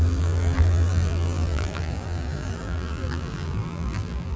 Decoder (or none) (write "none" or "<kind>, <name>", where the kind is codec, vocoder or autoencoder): vocoder, BigVGAN v2